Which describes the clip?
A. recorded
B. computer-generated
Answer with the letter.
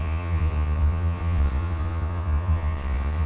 B